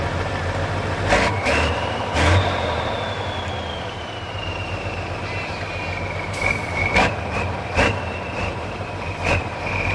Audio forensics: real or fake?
fake